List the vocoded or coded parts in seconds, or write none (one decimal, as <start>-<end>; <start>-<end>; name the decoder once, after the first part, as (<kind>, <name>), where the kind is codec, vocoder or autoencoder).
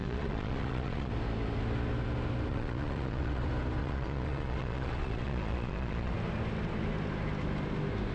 0.0-1.1 (vocoder, Vocos); 2.5-3.4; 3.8-6.1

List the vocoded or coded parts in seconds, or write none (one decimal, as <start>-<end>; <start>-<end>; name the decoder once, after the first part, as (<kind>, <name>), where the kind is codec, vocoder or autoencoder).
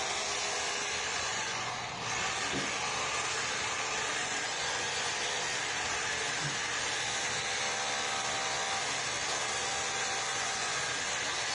1.1-1.7 (vocoder, Vocos); 4.2-5.1; 10.3-10.9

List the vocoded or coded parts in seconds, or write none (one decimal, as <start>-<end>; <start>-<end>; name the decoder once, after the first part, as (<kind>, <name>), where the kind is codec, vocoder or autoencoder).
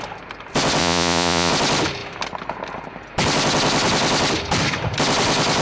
0.8-1.5 (vocoder, Vocos)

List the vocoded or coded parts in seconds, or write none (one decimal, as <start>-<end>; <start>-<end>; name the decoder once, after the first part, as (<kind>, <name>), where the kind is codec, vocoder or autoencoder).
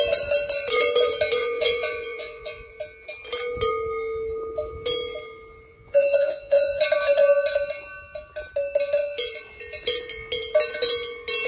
1.4-2.7 (vocoder, Vocos); 5.7-6.8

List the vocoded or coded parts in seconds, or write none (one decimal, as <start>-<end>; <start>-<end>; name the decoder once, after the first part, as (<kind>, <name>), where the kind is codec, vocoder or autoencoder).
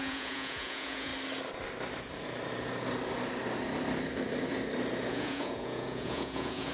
0.0-1.1 (vocoder, Vocos); 5.1-6.7